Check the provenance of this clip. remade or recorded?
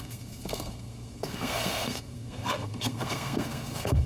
remade